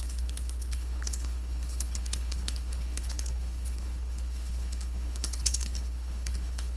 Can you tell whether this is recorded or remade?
remade